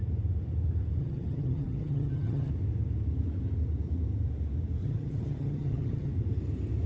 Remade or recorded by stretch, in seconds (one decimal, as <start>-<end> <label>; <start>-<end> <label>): 0.0-1.0 recorded; 1.0-2.5 remade; 2.5-4.8 recorded; 4.8-6.1 remade; 6.1-6.9 recorded